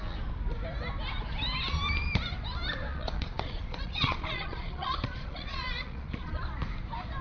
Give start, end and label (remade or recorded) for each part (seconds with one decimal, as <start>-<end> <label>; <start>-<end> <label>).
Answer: 0.0-2.9 recorded; 2.9-6.4 remade; 6.4-7.2 recorded